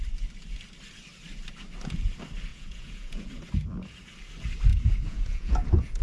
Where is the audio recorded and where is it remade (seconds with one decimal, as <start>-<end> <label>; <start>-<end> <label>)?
0.0-2.5 recorded; 2.5-3.3 remade; 3.3-4.7 recorded; 4.7-6.0 remade